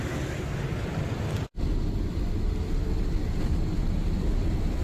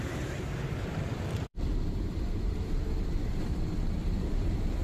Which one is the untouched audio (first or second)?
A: first